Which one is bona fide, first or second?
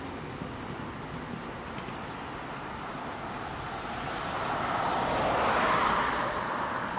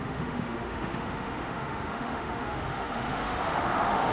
first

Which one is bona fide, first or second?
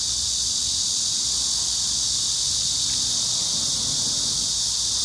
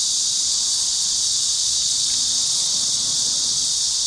first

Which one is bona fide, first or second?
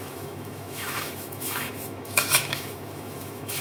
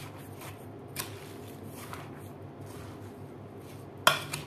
second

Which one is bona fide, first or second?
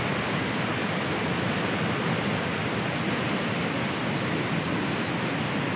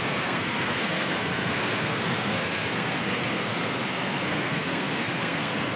first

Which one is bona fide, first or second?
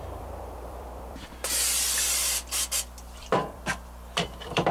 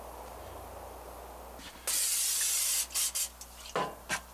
second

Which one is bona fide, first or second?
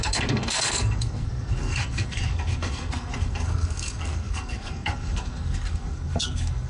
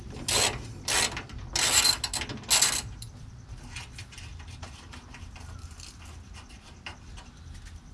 second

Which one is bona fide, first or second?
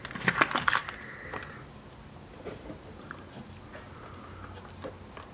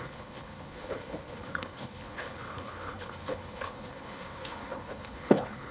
first